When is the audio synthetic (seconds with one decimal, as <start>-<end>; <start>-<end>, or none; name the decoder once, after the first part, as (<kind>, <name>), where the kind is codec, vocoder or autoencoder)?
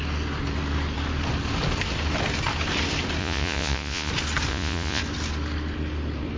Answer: 3.2-4.1 (vocoder, Vocos); 4.5-5.0